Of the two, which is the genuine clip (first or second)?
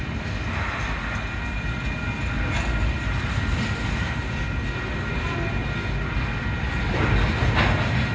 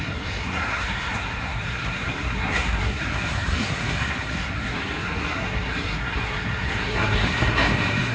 first